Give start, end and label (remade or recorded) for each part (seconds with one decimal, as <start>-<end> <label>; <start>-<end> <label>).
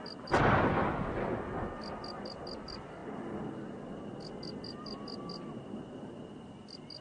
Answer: 0.0-7.0 recorded